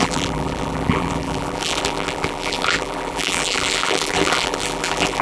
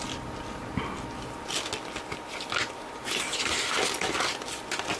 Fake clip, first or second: first